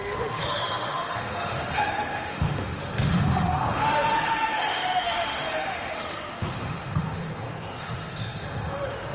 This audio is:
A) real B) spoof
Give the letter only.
B